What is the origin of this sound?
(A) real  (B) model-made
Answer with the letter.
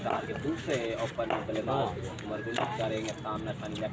A